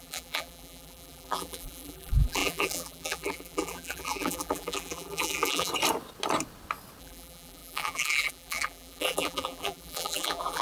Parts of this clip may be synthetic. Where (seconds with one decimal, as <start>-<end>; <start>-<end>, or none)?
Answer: 0.0-5.7; 7.0-10.6